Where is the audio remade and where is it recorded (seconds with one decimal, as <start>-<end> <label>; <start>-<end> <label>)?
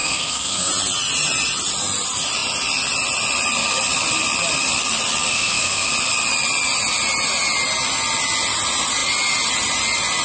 0.0-0.7 remade; 0.7-5.3 recorded; 5.3-5.9 remade; 5.9-10.2 recorded